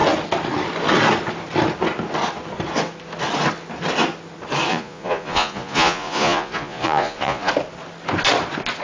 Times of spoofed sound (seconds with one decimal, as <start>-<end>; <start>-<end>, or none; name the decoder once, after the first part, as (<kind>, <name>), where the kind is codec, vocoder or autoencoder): 4.7-7.5 (vocoder, Vocos)